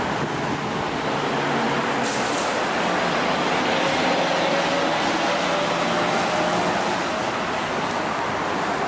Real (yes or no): yes